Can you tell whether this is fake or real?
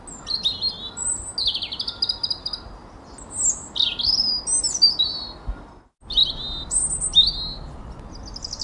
real